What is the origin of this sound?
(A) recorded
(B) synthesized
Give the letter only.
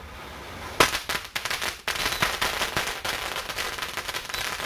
A